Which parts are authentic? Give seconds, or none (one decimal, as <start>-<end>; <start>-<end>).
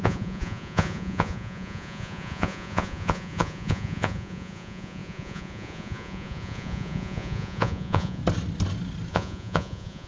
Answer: 8.2-9.1